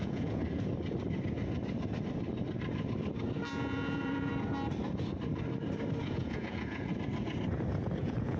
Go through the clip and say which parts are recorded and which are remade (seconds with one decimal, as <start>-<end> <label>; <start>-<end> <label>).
0.0-0.4 remade; 0.4-3.5 recorded; 3.5-4.3 remade; 4.3-6.0 recorded; 6.0-6.9 remade; 6.9-8.0 recorded; 8.0-8.4 remade